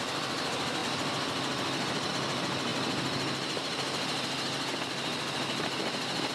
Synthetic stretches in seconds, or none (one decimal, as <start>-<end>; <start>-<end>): none